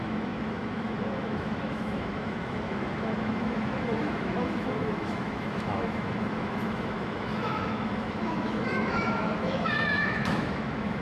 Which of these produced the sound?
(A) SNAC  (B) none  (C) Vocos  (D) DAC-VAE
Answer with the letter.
D